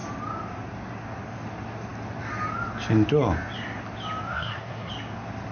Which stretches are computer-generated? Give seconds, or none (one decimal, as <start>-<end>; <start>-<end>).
4.3-4.9

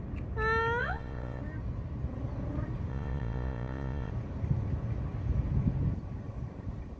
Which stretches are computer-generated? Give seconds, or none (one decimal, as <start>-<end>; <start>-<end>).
0.8-1.4; 2.9-4.1